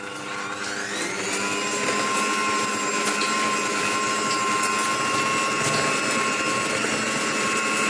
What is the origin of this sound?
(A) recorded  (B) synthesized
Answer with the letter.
A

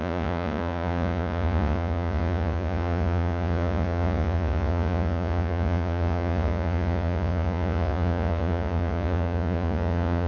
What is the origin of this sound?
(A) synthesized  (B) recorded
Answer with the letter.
A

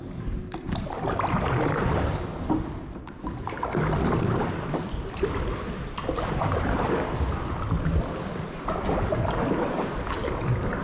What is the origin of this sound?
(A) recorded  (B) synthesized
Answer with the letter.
A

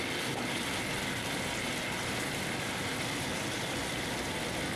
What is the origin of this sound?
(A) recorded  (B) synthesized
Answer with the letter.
A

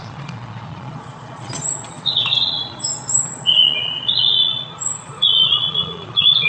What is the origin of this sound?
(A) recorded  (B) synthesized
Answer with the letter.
B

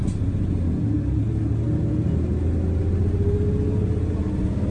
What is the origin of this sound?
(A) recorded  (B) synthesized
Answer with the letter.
A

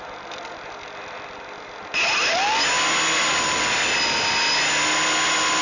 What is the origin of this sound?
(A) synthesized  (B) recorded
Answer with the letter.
B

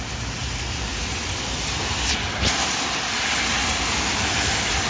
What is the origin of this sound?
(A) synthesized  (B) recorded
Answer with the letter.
B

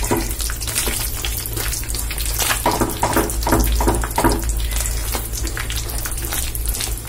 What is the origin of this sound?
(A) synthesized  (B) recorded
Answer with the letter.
B